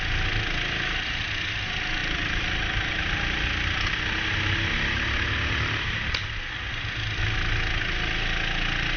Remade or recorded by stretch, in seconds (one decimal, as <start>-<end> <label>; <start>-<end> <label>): 0.0-9.0 recorded